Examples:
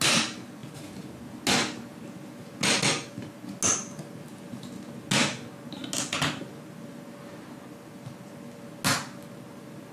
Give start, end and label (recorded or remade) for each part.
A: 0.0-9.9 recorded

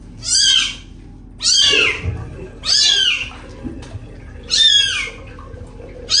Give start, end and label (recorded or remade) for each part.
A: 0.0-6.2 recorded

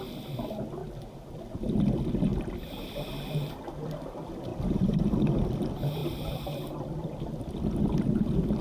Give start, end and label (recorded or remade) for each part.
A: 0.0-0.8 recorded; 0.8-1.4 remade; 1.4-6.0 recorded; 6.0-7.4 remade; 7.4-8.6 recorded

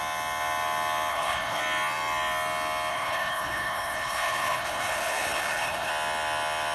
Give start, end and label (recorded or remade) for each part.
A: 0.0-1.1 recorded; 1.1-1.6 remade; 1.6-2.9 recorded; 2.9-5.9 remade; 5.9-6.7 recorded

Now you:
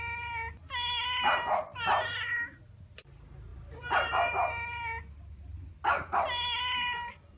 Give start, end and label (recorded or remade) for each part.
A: 0.0-3.5 recorded; 3.5-4.1 remade; 4.1-7.4 recorded

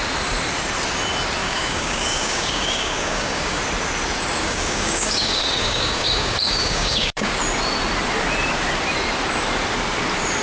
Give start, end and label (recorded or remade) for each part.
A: 0.0-1.4 recorded; 1.4-3.6 remade; 3.6-4.4 recorded; 4.4-7.3 remade; 7.3-10.4 recorded

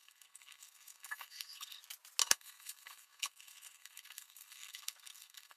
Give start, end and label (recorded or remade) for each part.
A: 0.0-1.8 remade; 1.8-2.2 recorded; 2.2-5.6 remade